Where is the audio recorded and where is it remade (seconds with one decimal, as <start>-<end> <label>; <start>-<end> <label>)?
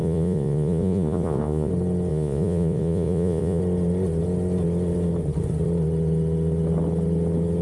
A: 0.0-1.7 remade; 1.7-2.1 recorded; 2.1-3.6 remade; 3.6-7.6 recorded